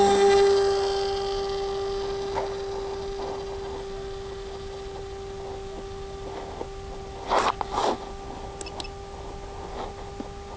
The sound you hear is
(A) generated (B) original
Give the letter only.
B